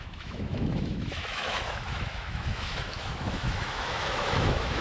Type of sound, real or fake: fake